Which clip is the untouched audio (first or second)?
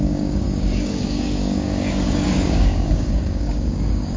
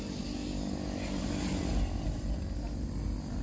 second